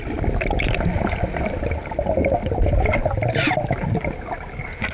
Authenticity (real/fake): real